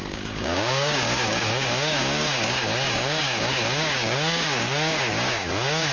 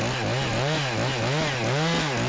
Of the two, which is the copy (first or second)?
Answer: first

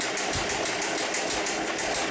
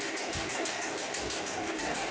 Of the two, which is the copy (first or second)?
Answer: second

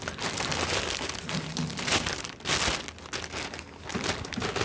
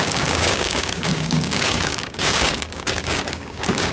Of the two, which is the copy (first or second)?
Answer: second